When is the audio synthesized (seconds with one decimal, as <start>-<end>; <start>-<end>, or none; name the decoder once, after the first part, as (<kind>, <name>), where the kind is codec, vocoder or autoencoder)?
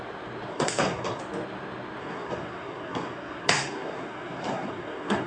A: 0.5-1.2 (codec, SNAC); 2.0-5.3